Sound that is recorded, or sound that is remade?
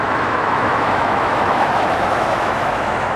remade